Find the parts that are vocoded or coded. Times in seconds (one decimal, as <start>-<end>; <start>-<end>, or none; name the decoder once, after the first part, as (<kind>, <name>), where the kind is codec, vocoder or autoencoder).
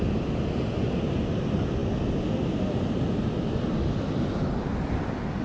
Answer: none